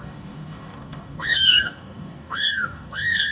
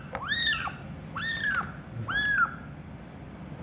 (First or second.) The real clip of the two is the second